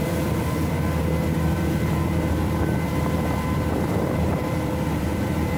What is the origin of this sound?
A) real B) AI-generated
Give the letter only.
B